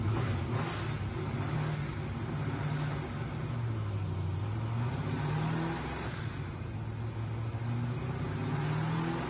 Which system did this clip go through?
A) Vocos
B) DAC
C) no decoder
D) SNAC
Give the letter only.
C